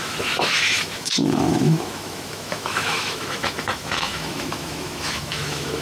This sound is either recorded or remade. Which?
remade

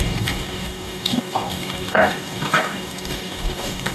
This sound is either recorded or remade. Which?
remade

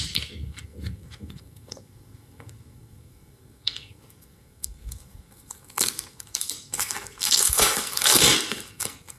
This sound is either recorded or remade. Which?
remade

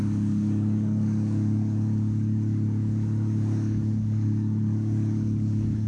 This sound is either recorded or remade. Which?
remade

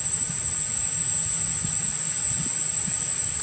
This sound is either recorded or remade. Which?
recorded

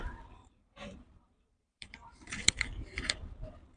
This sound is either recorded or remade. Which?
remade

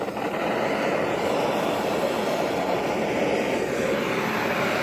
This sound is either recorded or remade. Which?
recorded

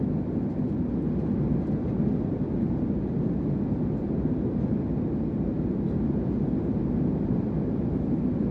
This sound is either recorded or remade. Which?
recorded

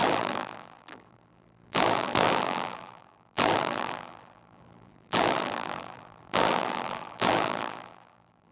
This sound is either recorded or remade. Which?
remade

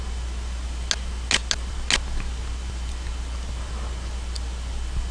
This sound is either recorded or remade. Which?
recorded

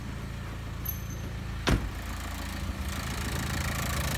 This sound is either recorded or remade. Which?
recorded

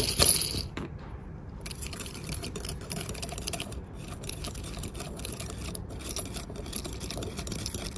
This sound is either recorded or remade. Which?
remade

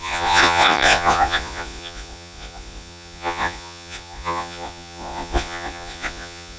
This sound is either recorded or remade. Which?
remade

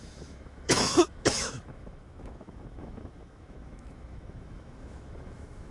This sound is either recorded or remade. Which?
remade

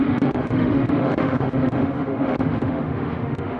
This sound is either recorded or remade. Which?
remade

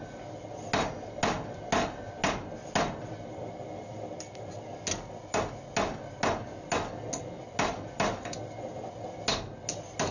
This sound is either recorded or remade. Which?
recorded